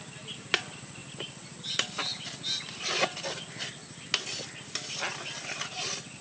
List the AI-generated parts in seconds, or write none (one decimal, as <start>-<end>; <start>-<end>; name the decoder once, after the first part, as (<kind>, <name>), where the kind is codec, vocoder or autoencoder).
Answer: none

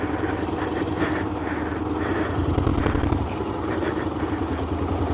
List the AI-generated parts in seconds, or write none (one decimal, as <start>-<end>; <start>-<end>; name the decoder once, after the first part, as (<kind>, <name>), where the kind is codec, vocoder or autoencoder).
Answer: none

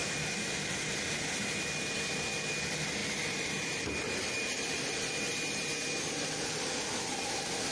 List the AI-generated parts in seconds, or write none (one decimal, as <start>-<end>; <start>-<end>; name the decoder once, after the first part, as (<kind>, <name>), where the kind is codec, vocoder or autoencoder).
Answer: 0.0-0.8 (vocoder, BigVGAN v2); 3.0-5.2

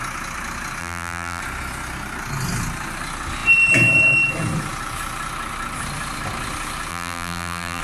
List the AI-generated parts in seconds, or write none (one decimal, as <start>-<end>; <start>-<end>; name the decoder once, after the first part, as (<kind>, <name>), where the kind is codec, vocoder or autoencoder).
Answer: 0.8-1.4 (vocoder, BigVGAN v2); 6.9-7.8

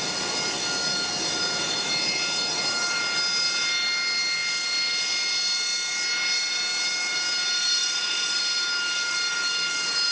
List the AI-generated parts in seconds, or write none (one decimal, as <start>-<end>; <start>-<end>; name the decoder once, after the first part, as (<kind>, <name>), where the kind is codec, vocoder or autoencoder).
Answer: 7.8-8.4 (vocoder, BigVGAN v2)

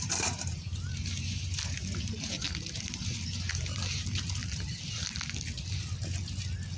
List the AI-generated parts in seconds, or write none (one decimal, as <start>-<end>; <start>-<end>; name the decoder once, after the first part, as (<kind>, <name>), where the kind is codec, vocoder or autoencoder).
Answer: 0.0-4.4 (vocoder, BigVGAN v2)

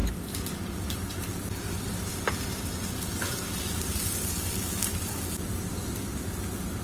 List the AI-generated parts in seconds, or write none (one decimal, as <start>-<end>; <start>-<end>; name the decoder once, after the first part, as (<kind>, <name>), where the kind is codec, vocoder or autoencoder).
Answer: 0.0-1.3 (vocoder, BigVGAN v2); 2.1-4.1

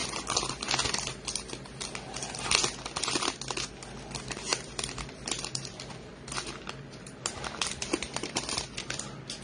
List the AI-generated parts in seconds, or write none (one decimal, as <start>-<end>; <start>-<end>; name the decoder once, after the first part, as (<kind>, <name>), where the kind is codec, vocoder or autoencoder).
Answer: 4.5-9.4 (vocoder, BigVGAN v2)